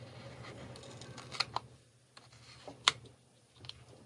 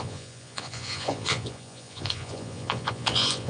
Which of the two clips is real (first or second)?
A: first